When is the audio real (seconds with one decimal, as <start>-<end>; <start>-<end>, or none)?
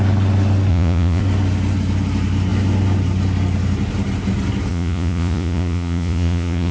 0.0-0.7; 1.2-4.7